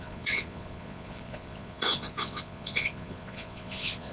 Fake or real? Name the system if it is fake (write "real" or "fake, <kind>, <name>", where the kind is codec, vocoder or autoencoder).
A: fake, vocoder, Vocos